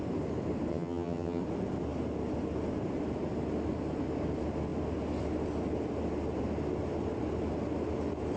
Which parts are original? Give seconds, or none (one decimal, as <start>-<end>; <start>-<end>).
0.0-0.7; 1.4-8.4